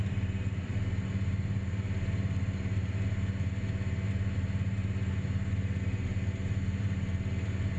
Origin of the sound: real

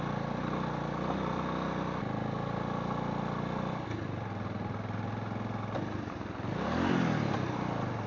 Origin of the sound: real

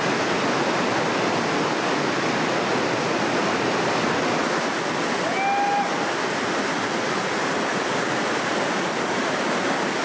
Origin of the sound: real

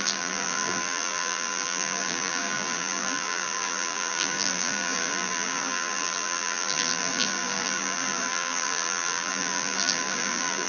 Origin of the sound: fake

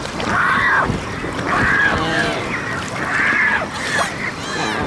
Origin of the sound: real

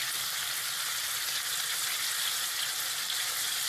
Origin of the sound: real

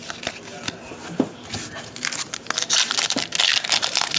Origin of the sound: real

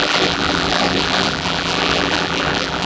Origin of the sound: fake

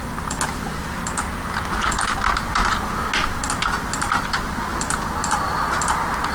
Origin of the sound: real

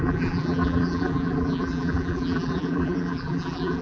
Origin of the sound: fake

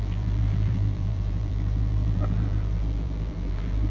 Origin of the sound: fake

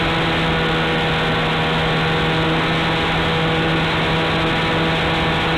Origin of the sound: real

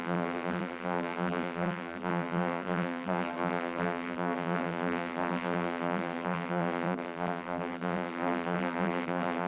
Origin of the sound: fake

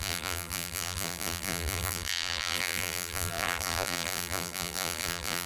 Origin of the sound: fake